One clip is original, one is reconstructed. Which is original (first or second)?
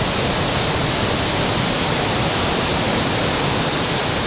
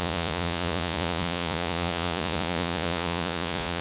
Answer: first